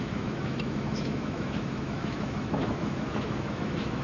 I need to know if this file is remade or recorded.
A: remade